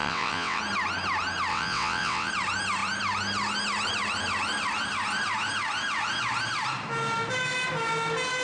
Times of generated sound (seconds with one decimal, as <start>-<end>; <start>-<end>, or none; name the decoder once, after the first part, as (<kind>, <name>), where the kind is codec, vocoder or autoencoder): 0.0-0.6 (vocoder, WaveNeXt); 1.5-2.3